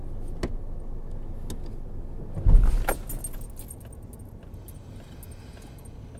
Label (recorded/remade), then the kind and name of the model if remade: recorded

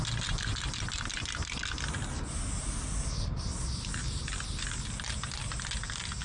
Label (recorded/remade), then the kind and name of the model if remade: recorded